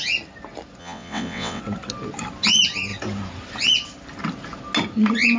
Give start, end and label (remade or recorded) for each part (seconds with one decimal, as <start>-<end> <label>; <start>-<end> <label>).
0.0-0.8 recorded; 0.8-1.6 remade; 1.6-5.4 recorded